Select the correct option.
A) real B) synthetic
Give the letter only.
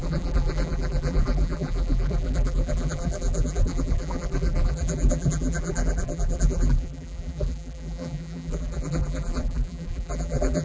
B